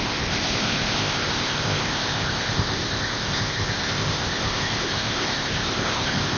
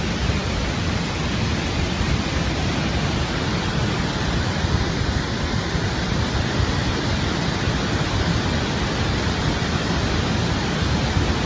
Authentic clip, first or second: second